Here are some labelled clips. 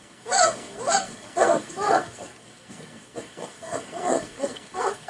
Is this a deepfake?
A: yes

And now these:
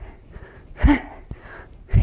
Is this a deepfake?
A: no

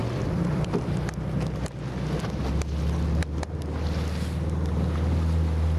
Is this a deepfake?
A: no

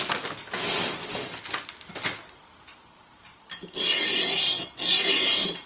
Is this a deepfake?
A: no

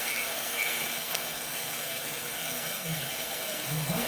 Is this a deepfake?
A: yes